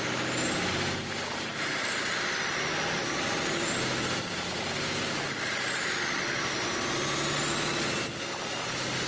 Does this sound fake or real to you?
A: real